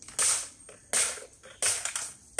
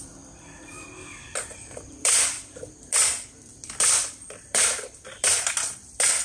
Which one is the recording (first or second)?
first